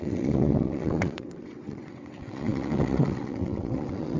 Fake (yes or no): yes